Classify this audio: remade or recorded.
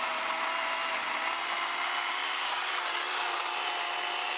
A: recorded